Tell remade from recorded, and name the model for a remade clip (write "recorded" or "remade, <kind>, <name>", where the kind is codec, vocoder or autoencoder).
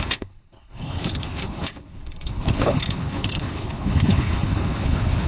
remade, codec, HILCodec